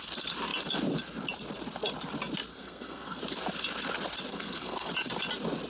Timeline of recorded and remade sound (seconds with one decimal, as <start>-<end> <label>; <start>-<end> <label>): 0.0-2.5 recorded; 2.5-3.2 remade; 3.2-4.3 recorded; 4.3-4.9 remade; 4.9-5.7 recorded